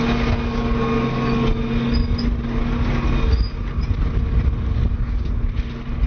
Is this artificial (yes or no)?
no